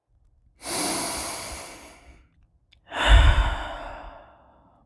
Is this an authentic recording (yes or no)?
yes